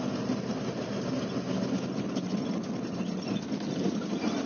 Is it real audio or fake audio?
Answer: real